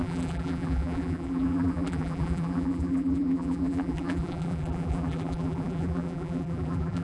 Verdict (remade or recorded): remade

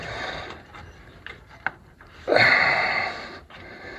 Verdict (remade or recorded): remade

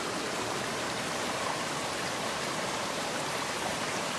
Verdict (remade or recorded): remade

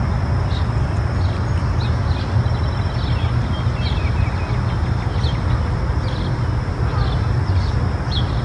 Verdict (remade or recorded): recorded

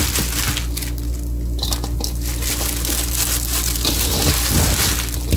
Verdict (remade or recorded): recorded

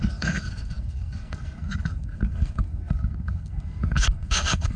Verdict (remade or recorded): remade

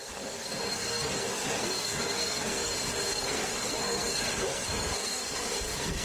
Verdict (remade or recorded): remade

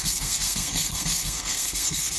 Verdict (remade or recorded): remade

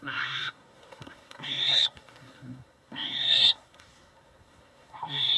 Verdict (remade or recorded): remade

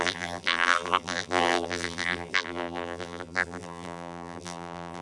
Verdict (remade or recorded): remade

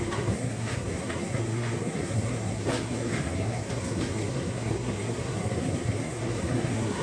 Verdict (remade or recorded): remade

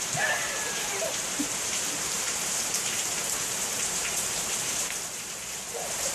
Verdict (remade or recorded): remade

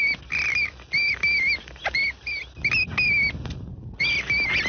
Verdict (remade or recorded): recorded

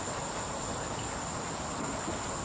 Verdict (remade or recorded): recorded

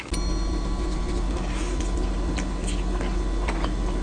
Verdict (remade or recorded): recorded